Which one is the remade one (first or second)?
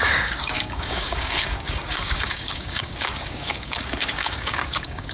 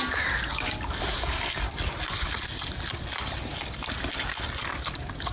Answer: first